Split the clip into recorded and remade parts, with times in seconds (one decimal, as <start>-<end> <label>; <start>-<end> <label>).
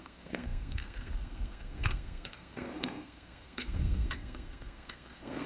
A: 0.0-5.5 remade